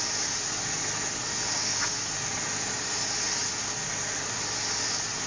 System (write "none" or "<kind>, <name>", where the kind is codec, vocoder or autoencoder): none